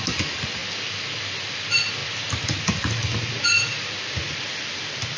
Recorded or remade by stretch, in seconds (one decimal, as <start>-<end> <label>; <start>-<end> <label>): 0.0-2.0 recorded; 2.0-5.2 remade